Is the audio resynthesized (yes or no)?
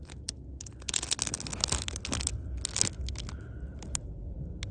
no